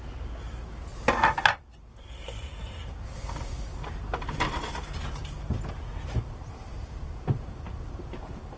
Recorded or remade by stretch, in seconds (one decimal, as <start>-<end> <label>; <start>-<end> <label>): 0.0-8.6 recorded

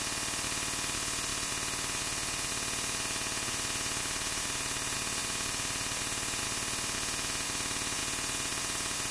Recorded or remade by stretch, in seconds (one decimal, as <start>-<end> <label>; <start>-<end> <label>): 0.0-9.1 recorded

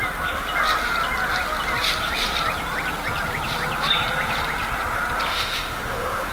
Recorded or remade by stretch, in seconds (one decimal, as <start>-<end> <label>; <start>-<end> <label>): 0.0-5.3 recorded; 5.3-6.3 remade